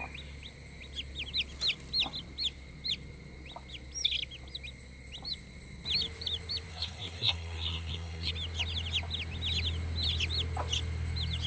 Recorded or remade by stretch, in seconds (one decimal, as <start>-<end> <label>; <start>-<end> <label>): 0.0-6.7 recorded; 6.7-8.3 remade; 8.3-11.5 recorded